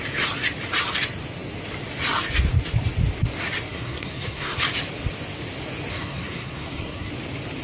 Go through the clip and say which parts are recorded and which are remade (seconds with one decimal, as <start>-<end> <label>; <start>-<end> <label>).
0.0-3.7 recorded; 3.7-4.6 remade; 4.6-5.9 recorded; 5.9-7.1 remade; 7.1-7.6 recorded